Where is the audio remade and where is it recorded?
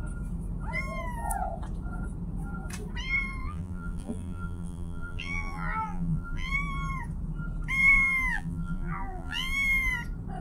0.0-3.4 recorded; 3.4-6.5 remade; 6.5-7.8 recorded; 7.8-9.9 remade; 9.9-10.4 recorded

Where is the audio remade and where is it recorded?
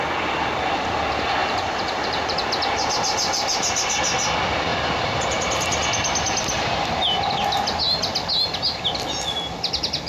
0.0-1.4 recorded; 1.4-2.4 remade; 2.4-10.1 recorded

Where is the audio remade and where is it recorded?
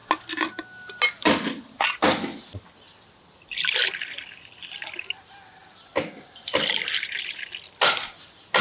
0.0-5.6 recorded; 5.6-7.5 remade; 7.5-8.6 recorded